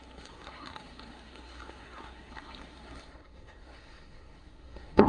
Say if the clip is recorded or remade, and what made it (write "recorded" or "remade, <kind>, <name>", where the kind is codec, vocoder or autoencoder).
remade, codec, SNAC